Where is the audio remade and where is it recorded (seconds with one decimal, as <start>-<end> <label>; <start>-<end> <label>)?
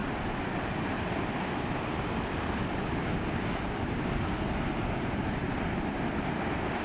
0.0-6.8 recorded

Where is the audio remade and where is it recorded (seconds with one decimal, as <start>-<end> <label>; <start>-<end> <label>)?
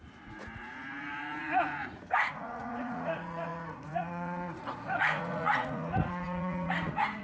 0.0-7.2 remade